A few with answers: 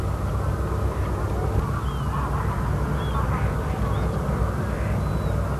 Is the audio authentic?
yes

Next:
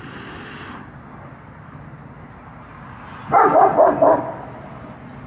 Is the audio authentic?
yes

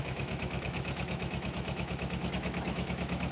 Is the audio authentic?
no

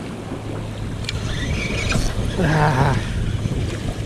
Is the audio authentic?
yes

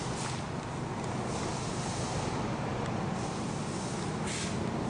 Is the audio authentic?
yes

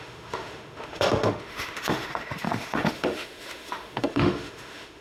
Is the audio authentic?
no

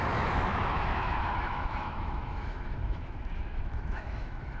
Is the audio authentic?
no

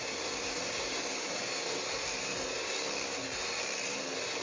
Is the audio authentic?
yes